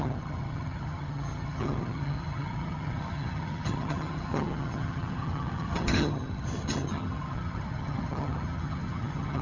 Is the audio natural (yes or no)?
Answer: no